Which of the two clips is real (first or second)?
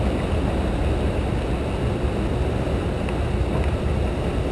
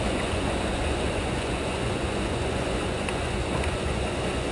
first